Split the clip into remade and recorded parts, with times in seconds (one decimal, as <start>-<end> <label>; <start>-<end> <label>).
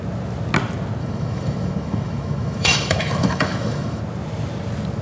0.0-1.0 recorded; 1.0-4.0 remade; 4.0-5.0 recorded